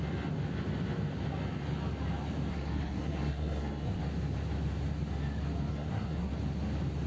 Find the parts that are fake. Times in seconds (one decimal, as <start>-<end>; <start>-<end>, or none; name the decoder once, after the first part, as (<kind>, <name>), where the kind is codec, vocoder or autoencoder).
2.5-4.0 (codec, SNAC); 5.7-6.3